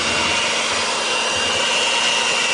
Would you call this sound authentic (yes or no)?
yes